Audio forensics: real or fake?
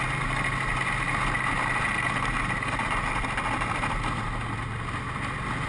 real